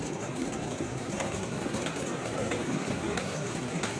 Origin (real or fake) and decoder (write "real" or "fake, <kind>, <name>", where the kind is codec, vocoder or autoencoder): fake, codec, SNAC